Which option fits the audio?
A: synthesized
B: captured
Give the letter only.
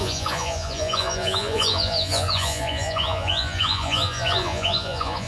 A